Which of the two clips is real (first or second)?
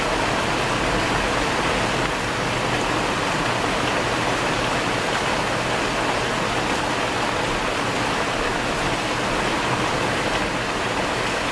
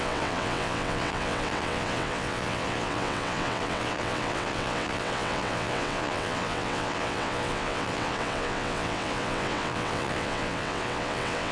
first